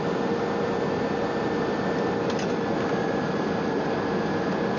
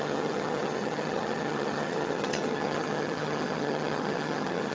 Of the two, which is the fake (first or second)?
second